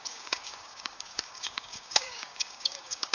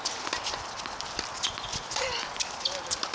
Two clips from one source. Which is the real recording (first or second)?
second